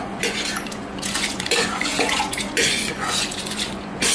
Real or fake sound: fake